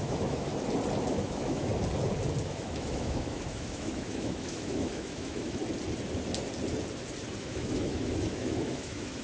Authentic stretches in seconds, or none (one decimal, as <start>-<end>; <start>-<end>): 0.5-1.1; 1.7-2.4; 5.6-7.4